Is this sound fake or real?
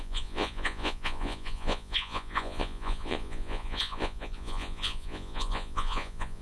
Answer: fake